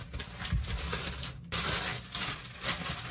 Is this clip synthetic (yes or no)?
no